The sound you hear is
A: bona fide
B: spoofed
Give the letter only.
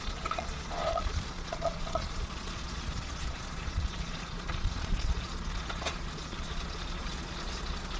B